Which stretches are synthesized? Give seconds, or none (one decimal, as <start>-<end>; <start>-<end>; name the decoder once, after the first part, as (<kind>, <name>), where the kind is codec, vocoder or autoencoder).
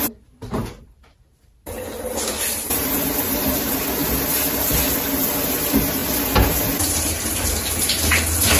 0.0-8.6 (vocoder, BigVGAN v2)